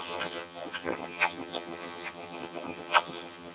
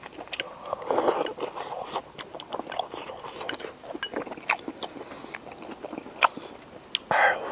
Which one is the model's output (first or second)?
first